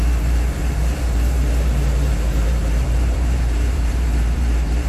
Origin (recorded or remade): remade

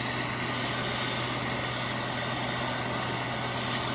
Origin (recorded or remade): recorded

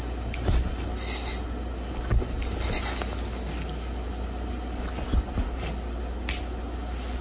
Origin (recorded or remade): recorded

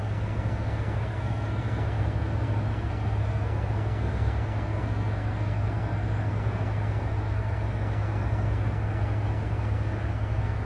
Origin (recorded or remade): remade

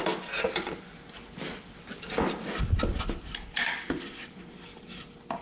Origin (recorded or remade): recorded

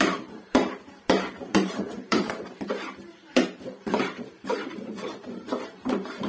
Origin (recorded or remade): remade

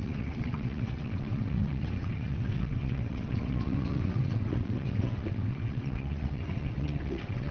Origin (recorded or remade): remade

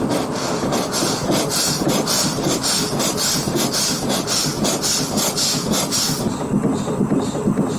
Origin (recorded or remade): recorded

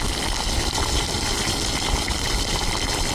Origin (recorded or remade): recorded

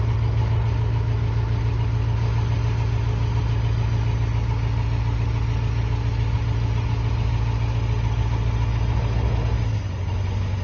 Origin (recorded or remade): recorded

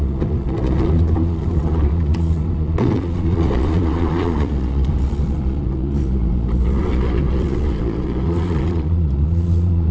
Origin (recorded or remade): remade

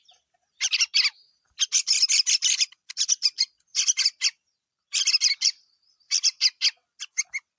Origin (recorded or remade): recorded